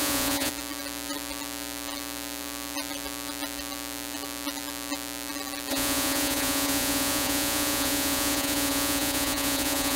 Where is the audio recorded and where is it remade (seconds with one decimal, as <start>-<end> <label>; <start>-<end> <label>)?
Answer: 0.0-0.5 remade; 0.5-5.7 recorded; 5.7-10.0 remade